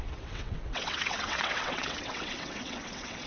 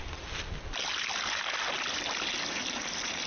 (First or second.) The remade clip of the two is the first